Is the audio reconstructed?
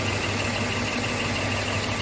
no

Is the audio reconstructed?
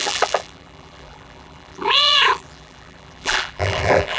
yes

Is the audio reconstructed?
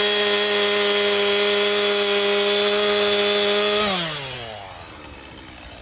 no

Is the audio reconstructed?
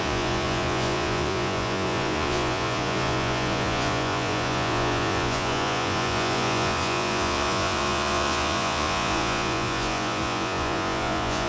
yes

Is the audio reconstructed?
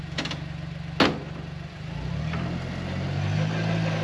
no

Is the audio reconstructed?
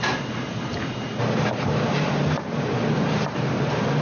yes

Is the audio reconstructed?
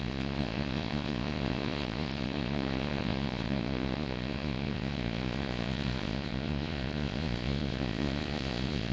yes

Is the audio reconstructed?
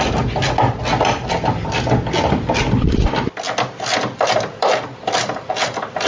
no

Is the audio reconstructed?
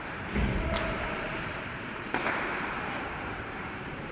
yes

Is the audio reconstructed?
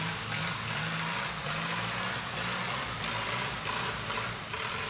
no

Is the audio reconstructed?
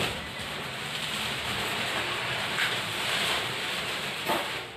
yes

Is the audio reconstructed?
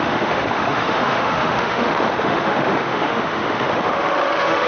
yes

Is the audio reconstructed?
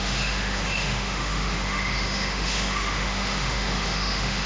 yes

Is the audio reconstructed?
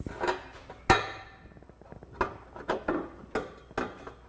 no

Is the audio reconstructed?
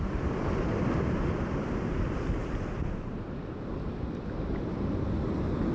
yes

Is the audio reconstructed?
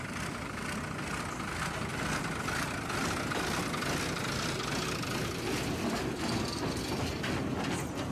no